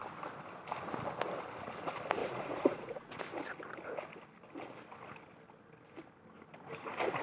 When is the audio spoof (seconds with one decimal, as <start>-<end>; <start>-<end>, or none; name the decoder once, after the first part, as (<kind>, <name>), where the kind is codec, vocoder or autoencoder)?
2.2-3.2 (vocoder, Vocos)